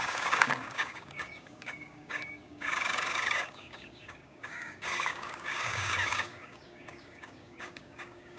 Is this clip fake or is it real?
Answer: fake